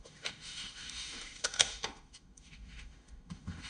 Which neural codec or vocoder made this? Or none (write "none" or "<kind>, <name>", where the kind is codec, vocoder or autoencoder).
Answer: autoencoder, DAC-VAE